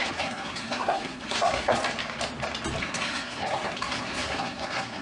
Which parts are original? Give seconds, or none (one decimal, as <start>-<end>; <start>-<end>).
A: 1.8-2.8